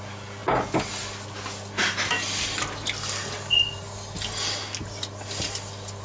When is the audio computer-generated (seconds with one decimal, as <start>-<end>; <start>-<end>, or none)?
none